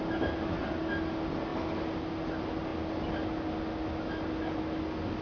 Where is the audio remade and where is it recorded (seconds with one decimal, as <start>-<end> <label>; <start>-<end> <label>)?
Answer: 0.0-5.2 recorded